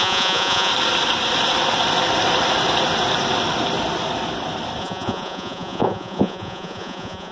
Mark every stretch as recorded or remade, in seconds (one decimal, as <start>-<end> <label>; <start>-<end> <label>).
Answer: 0.0-0.7 remade; 0.7-4.8 recorded; 4.8-7.3 remade